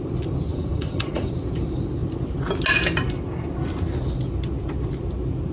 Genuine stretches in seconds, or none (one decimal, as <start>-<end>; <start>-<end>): 0.0-0.5; 1.3-5.5